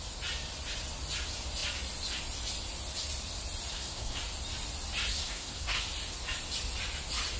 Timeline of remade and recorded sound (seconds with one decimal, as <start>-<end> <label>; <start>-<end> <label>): 0.0-3.7 recorded; 3.7-4.2 remade; 4.2-5.1 recorded; 5.1-5.8 remade; 5.8-7.4 recorded